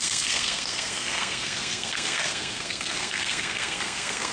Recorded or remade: remade